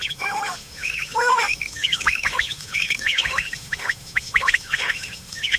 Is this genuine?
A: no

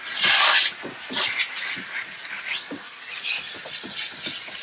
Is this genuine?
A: yes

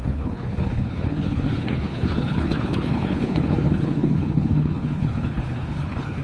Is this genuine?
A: no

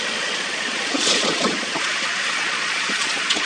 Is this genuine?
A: no